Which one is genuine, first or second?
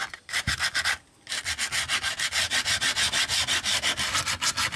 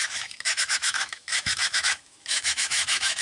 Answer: first